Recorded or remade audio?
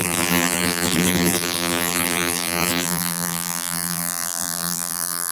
remade